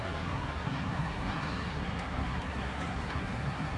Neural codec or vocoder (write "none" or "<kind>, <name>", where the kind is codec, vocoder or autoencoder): codec, SNAC